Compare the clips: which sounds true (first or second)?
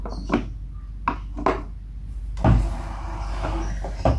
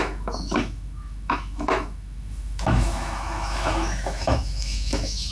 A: first